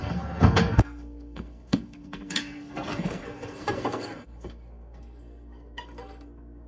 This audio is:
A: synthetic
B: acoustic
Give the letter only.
A